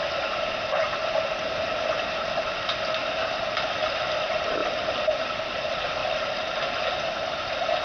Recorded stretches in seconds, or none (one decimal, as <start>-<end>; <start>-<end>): 0.0-7.8